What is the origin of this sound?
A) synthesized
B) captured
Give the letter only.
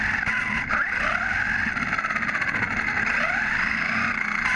B